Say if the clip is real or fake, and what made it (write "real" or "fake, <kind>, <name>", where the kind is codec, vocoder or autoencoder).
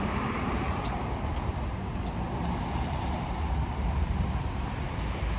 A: real